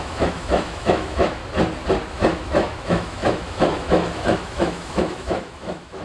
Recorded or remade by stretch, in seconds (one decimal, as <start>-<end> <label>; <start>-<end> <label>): 0.0-1.4 remade; 1.4-2.1 recorded; 2.1-6.0 remade